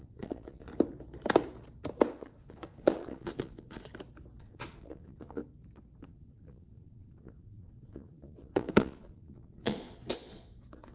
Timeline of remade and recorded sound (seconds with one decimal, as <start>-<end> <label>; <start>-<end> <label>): 0.0-0.7 remade; 0.7-2.1 recorded; 2.1-3.9 remade; 3.9-4.4 recorded; 4.4-5.4 remade; 5.4-6.0 recorded; 6.0-10.9 remade